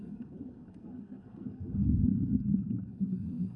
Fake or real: fake